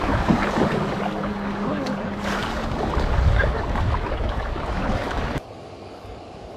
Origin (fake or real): fake